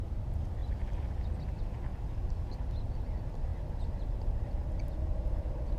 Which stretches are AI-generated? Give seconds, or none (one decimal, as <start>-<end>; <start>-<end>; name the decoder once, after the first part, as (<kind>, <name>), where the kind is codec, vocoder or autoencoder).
0.6-1.1 (vocoder, BigVGAN v2); 1.9-2.7; 3.5-4.0